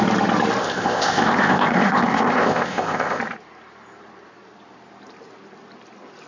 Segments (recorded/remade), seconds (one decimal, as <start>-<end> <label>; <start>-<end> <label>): 0.0-0.6 recorded; 0.6-3.2 remade; 3.2-6.3 recorded